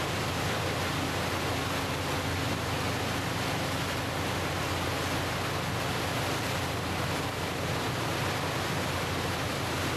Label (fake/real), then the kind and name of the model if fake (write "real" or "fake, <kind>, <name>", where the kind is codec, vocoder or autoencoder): real